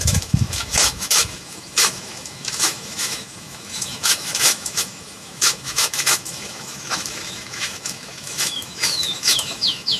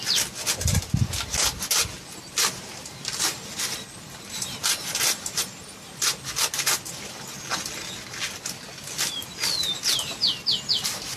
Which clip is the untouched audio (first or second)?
second